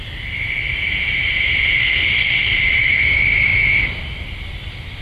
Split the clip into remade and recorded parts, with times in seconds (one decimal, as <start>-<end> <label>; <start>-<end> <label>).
0.0-1.8 recorded; 1.8-2.6 remade; 2.6-5.0 recorded